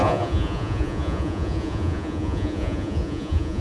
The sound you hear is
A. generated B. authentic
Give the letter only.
A